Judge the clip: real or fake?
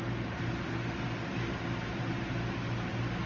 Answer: real